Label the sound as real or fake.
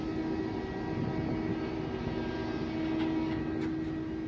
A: real